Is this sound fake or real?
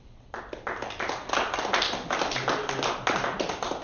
real